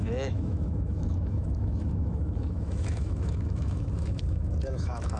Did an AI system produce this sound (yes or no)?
yes